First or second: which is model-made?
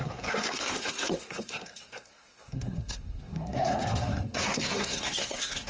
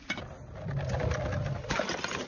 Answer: first